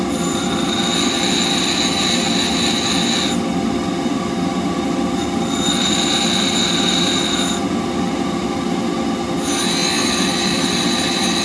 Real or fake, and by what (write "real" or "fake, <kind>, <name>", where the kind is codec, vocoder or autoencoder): real